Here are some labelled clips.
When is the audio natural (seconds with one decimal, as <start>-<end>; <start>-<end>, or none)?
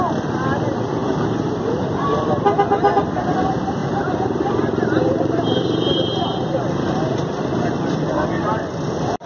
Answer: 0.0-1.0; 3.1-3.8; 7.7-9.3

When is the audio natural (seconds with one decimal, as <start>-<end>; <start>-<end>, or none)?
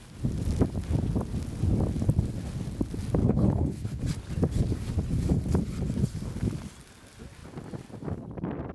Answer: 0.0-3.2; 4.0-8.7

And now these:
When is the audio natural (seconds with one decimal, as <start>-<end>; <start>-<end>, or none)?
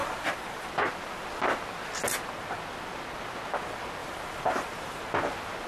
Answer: 0.7-4.0; 5.0-5.7